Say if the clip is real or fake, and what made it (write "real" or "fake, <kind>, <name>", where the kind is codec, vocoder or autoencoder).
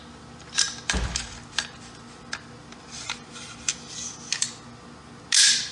real